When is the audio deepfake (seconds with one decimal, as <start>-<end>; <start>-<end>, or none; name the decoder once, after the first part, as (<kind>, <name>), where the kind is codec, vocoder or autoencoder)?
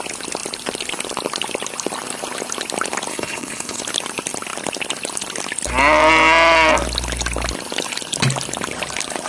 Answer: 3.1-3.8 (codec, HILCodec)